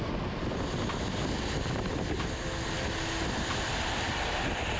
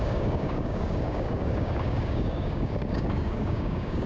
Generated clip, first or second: second